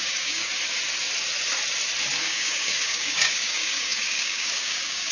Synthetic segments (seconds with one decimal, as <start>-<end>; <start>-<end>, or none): 0.0-0.5; 2.2-5.1